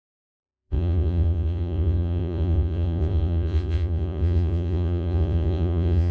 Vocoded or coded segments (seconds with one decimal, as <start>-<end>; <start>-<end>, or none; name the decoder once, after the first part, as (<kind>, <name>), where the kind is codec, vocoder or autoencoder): 0.0-6.1 (vocoder, Vocos)